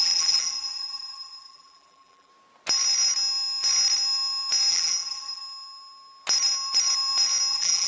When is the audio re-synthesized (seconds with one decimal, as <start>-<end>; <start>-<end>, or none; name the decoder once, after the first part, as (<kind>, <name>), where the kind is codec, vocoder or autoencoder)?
0.0-2.3 (vocoder, BigVGAN v2); 4.7-5.4; 7.5-7.9